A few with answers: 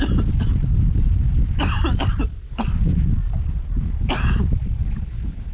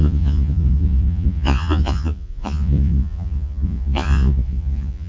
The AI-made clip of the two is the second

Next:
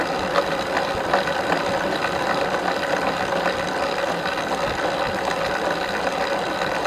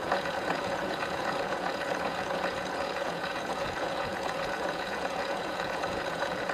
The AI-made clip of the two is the second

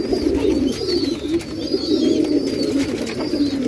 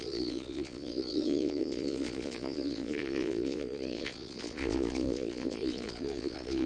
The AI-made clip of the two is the second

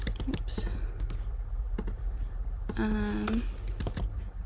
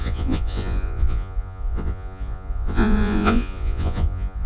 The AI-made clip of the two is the second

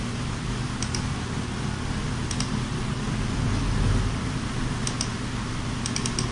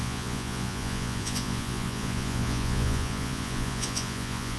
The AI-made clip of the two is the second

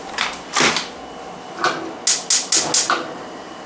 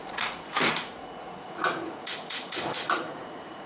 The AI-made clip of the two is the second